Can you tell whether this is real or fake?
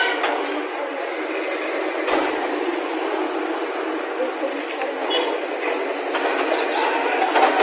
real